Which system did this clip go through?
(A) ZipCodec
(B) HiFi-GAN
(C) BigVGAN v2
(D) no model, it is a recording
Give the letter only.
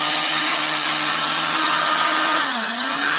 B